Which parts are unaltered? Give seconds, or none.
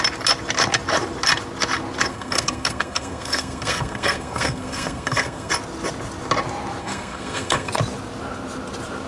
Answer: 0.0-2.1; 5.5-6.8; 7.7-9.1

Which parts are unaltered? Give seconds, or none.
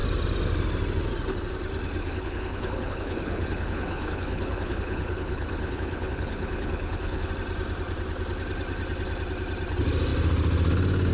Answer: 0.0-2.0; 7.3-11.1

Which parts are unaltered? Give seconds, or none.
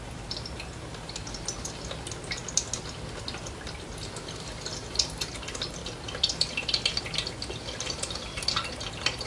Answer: 0.0-9.3